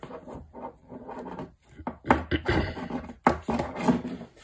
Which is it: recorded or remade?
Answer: recorded